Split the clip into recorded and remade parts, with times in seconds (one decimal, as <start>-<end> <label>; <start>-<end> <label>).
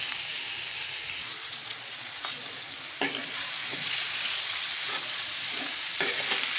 0.0-1.2 recorded; 1.2-2.7 remade; 2.7-3.2 recorded; 3.2-5.8 remade; 5.8-6.6 recorded